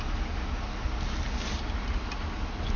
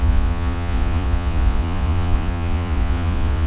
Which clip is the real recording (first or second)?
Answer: first